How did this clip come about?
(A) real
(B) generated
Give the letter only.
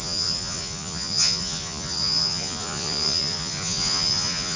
B